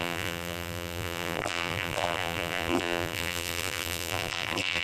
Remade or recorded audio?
remade